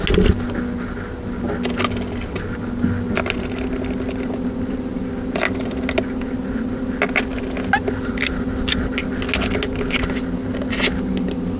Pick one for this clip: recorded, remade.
recorded